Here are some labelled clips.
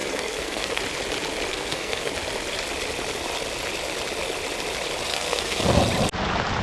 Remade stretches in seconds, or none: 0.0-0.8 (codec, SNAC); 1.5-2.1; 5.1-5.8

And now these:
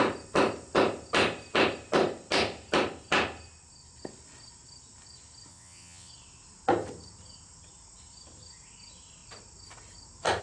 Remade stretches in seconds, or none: 5.5-6.1 (vocoder, WaveNeXt)

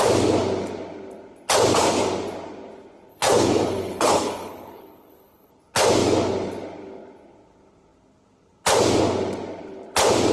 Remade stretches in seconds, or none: 3.1-5.5 (codec, HILCodec)

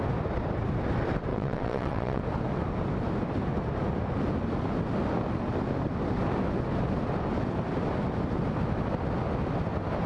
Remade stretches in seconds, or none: 1.3-2.2 (vocoder, WaveNeXt)

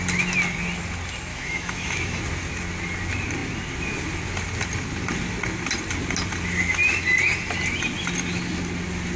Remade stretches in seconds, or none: 1.3-2.2 (autoencoder, DAC-VAE)

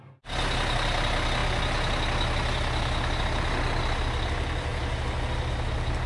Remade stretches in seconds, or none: none

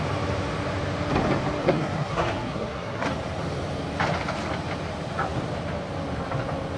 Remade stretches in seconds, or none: 1.6-3.1 (codec, SNAC)